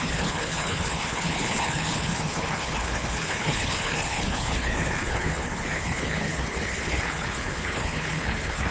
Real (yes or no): no